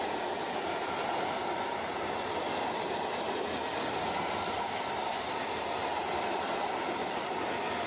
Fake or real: real